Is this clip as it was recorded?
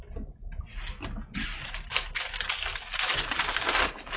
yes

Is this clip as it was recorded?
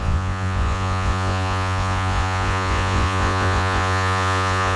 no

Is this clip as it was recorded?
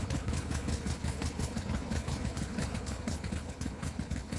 no